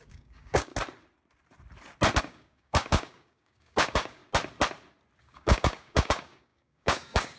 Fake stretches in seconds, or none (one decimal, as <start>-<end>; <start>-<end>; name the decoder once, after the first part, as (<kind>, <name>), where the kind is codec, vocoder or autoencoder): 0.0-0.7 (codec, DAC); 2.2-4.2; 5.2-7.4